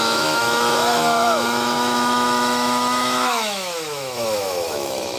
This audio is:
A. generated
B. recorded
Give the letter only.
A